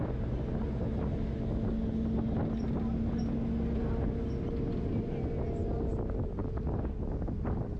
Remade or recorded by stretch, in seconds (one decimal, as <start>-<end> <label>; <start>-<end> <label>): 0.0-7.8 recorded